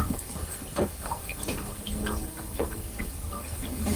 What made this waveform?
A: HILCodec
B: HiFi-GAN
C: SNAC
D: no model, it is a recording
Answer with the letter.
C